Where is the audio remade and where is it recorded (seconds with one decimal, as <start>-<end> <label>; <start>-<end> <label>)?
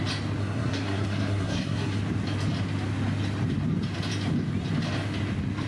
0.0-0.4 recorded; 0.4-2.0 remade; 2.0-5.7 recorded